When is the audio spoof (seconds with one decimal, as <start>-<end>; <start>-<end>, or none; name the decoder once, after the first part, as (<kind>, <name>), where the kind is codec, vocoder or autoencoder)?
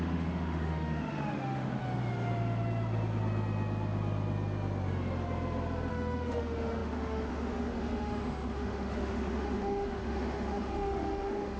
0.0-1.8 (autoencoder, DAC-VAE); 5.9-11.6